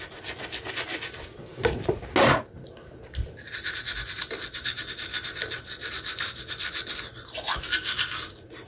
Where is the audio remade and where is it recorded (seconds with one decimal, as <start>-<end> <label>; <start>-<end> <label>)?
0.0-8.7 recorded